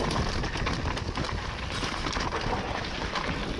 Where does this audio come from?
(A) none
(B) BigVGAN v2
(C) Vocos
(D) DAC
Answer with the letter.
A